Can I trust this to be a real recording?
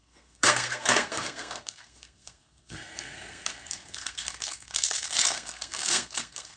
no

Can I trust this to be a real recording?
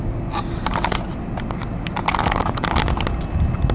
yes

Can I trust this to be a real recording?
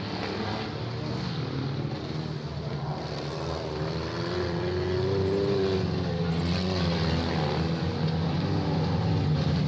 yes